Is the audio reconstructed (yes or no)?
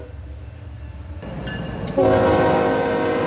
no